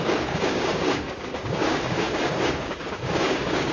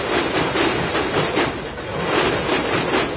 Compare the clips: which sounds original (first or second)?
second